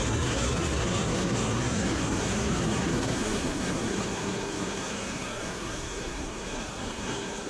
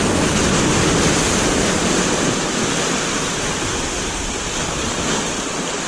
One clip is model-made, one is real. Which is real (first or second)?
second